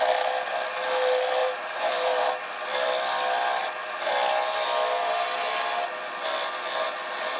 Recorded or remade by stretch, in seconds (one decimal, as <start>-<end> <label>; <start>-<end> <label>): 0.0-1.4 recorded; 1.4-2.3 remade; 2.3-3.6 recorded; 3.6-4.1 remade; 4.1-7.4 recorded